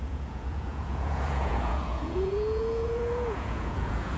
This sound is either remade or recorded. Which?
remade